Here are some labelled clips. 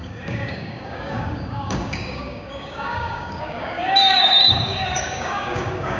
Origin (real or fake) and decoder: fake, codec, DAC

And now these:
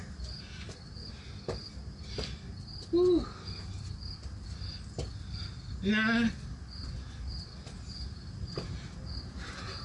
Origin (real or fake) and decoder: real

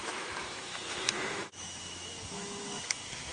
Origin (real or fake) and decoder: fake, autoencoder, DAC-VAE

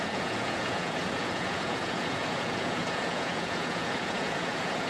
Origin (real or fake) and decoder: fake, vocoder, Vocos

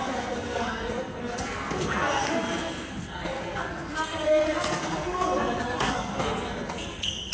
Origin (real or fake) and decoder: fake, codec, SNAC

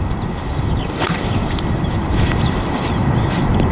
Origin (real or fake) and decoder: fake, vocoder, BigVGAN v2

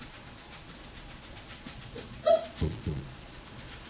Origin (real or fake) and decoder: fake, vocoder, Vocos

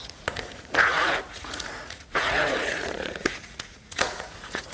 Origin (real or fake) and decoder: fake, vocoder, Vocos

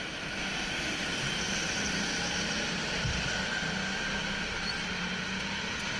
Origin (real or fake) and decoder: real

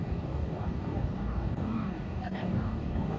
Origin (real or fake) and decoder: fake, codec, DAC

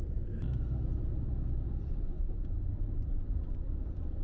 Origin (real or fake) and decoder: real